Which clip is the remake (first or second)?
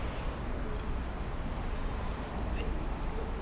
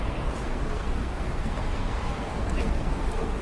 second